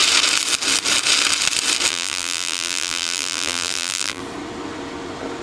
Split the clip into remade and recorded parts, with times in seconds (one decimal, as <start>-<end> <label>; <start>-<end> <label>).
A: 0.0-1.9 recorded; 1.9-4.2 remade; 4.2-5.4 recorded

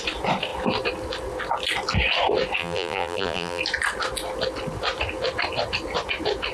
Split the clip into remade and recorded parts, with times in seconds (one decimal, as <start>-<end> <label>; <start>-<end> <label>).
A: 0.0-2.6 recorded; 2.6-3.6 remade; 3.6-6.5 recorded

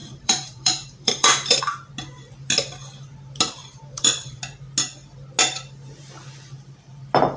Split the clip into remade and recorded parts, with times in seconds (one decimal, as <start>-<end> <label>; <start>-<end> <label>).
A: 0.0-1.6 remade; 1.6-3.6 recorded; 3.6-4.4 remade; 4.4-7.4 recorded

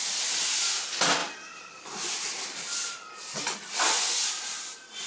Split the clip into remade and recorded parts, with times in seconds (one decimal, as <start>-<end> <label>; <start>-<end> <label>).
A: 0.0-5.1 recorded

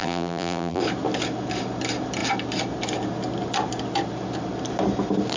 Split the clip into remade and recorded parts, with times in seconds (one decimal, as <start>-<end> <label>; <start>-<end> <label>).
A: 0.0-0.8 remade; 0.8-5.4 recorded

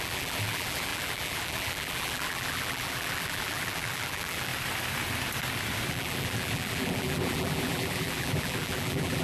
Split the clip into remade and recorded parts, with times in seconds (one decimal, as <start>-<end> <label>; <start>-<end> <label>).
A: 0.0-4.5 remade; 4.5-5.9 recorded; 5.9-9.2 remade

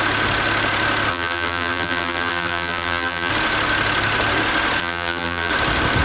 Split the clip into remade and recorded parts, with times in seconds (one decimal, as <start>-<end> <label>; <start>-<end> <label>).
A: 0.0-1.1 recorded; 1.1-3.3 remade; 3.3-4.8 recorded; 4.8-5.5 remade; 5.5-6.0 recorded

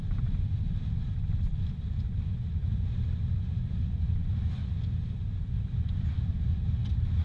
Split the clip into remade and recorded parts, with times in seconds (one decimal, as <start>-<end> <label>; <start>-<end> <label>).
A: 0.0-7.2 recorded